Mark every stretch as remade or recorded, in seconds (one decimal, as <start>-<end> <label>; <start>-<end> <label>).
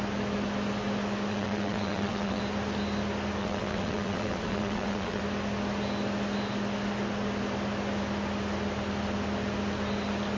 0.0-1.3 recorded; 1.3-2.4 remade; 2.4-3.4 recorded; 3.4-5.2 remade; 5.2-10.4 recorded